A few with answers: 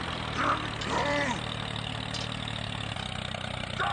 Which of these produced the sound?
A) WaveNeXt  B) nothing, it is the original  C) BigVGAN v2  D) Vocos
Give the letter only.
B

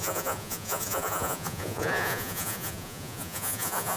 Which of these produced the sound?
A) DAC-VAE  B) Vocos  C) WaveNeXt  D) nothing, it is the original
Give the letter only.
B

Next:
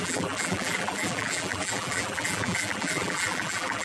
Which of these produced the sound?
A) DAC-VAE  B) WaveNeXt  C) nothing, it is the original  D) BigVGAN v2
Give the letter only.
D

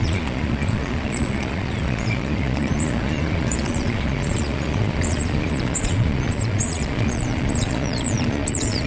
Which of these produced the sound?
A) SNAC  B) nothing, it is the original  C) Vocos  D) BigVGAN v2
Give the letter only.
C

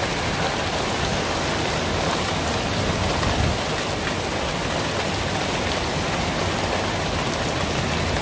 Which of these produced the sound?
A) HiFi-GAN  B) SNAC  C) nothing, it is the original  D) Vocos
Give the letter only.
C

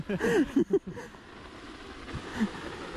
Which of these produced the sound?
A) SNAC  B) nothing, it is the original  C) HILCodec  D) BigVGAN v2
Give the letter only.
B